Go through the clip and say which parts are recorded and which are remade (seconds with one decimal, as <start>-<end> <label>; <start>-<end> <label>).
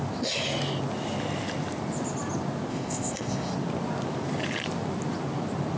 0.0-2.7 recorded; 2.7-3.5 remade; 3.5-5.8 recorded